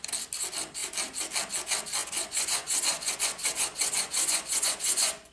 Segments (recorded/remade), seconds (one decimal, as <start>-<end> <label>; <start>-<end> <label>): 0.0-2.0 recorded; 2.0-5.3 remade